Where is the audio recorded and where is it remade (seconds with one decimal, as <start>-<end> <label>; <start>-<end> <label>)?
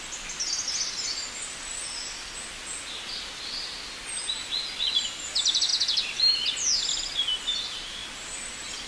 0.0-8.9 recorded